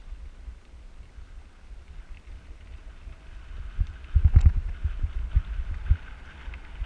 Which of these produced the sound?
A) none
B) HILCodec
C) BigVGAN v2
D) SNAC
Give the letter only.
A